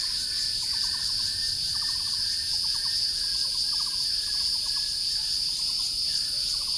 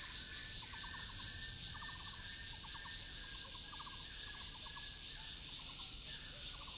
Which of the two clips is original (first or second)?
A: second